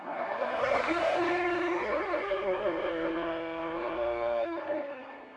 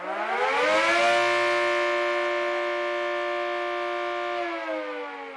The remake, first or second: first